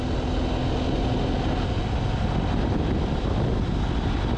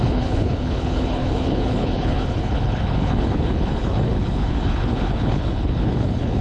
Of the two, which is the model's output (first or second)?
second